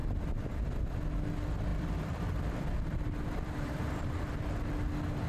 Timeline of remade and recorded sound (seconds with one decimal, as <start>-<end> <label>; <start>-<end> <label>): 0.0-0.7 remade; 0.7-1.7 recorded; 1.7-4.2 remade; 4.2-5.3 recorded